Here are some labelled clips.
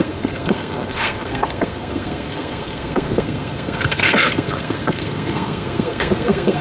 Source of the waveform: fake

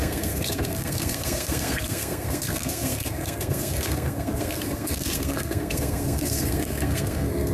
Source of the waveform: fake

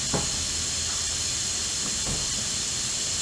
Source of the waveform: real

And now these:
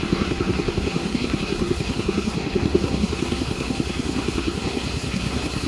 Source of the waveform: fake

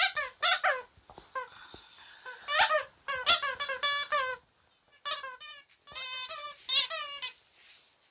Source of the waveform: real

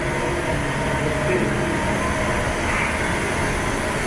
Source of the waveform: real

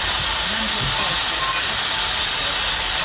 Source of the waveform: real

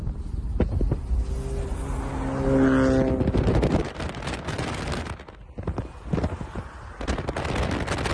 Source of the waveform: real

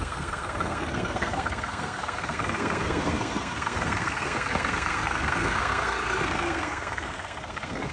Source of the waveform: fake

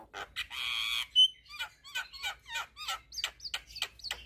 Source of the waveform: real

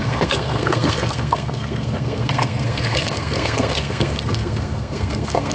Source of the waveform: fake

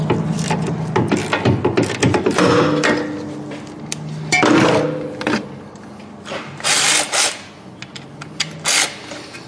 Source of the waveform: real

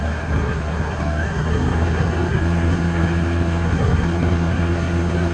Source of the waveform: fake